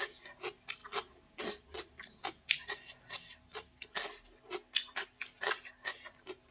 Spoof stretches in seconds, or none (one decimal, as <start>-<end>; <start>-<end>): none

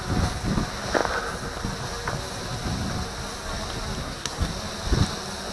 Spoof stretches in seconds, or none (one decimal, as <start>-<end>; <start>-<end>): 4.0-4.5

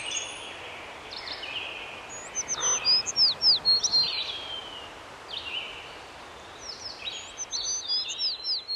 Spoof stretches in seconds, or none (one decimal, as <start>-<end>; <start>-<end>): none